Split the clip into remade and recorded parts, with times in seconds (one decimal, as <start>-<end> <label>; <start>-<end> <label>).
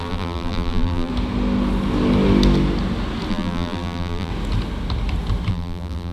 0.0-1.1 remade; 1.1-3.3 recorded; 3.3-4.3 remade; 4.3-5.5 recorded; 5.5-6.1 remade